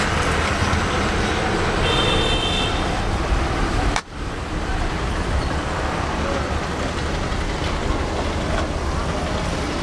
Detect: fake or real real